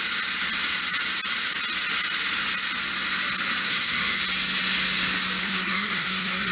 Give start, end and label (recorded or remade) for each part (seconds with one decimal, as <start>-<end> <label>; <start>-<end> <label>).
0.0-3.6 recorded; 3.6-4.2 remade; 4.2-5.4 recorded; 5.4-6.5 remade